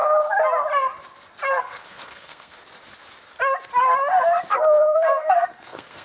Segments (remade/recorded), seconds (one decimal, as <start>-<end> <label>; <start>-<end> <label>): 0.0-1.6 recorded; 1.6-2.6 remade; 2.6-4.5 recorded; 4.5-6.0 remade